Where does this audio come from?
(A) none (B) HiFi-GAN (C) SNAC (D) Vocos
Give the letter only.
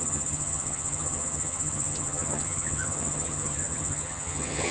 B